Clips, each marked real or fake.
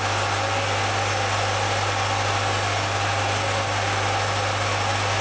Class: real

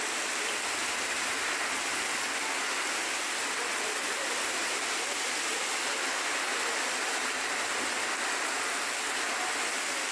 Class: real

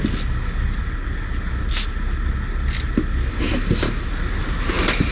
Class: real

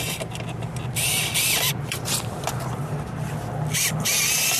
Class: real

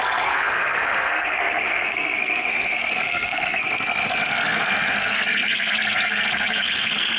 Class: fake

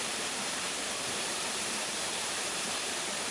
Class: fake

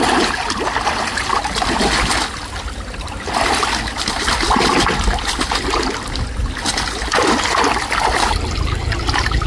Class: real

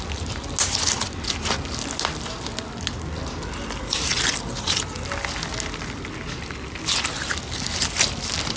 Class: real